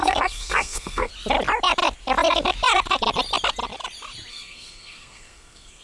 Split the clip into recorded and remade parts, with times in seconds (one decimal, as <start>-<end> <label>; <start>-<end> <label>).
0.0-1.1 remade; 1.1-4.3 recorded; 4.3-5.8 remade